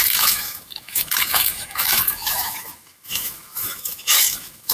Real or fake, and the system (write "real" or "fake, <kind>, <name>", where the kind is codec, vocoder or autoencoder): fake, autoencoder, DAC-VAE